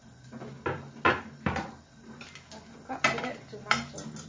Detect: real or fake real